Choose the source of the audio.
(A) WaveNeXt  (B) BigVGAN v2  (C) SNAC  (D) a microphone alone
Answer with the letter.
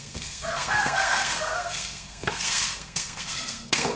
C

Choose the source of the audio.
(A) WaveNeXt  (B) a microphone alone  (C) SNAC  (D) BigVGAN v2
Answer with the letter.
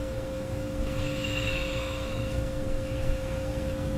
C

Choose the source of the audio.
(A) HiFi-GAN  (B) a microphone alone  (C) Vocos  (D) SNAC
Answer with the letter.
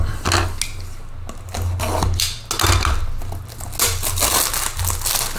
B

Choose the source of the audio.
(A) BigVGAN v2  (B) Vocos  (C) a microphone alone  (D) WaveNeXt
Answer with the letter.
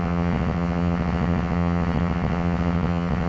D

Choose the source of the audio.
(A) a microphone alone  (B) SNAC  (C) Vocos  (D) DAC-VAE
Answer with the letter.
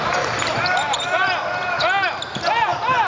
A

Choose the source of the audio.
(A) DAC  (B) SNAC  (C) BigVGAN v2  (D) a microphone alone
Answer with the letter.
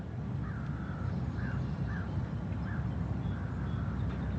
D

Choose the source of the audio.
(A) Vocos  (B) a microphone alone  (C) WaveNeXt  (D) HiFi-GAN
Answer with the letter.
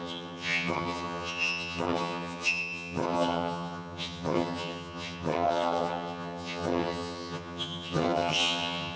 D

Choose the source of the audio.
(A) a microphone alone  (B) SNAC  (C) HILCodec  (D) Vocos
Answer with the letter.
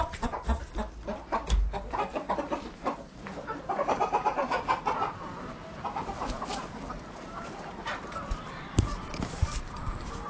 A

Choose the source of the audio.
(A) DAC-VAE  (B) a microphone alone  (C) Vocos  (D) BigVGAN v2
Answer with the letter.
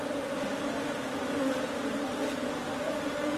B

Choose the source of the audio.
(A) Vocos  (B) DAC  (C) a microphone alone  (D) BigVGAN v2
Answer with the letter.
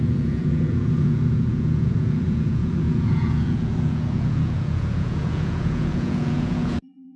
A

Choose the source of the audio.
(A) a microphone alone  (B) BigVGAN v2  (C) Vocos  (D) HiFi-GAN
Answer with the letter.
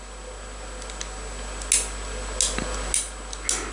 A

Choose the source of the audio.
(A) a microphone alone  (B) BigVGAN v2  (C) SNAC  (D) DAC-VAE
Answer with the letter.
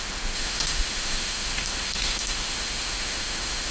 D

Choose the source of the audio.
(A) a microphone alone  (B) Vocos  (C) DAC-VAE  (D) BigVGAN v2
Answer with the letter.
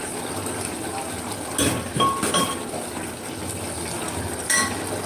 A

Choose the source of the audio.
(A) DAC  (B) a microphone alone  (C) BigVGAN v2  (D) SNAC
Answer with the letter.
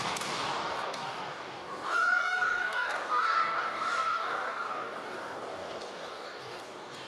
A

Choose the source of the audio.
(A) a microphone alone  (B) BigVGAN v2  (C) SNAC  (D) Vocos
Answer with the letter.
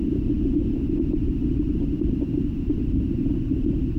A